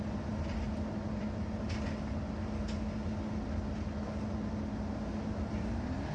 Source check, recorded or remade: recorded